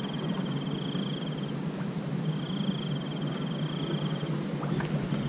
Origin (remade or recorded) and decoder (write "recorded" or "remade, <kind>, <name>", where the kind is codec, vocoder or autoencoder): recorded